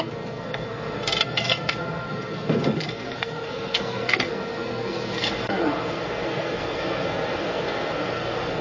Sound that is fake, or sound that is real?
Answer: fake